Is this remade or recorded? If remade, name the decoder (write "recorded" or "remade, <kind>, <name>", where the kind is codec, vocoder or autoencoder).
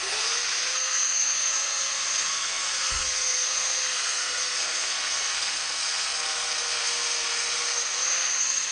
remade, codec, SNAC